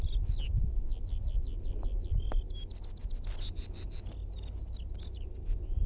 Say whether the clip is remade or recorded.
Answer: recorded